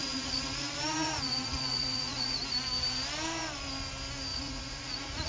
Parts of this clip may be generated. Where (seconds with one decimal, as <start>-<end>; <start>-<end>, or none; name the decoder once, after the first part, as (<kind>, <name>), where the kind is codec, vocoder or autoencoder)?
0.0-2.4 (vocoder, Vocos); 4.3-5.3